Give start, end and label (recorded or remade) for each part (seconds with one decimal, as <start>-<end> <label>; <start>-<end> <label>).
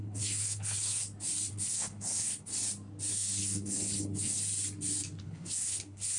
0.0-1.0 remade; 1.0-1.5 recorded; 1.5-2.5 remade; 2.5-3.1 recorded; 3.1-4.4 remade; 4.4-5.2 recorded; 5.2-6.2 remade